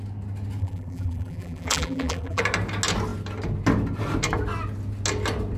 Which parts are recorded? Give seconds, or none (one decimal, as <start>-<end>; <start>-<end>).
0.0-0.6; 2.4-5.6